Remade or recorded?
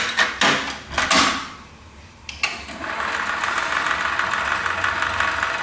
recorded